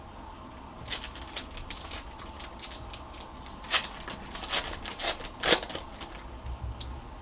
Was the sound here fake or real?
real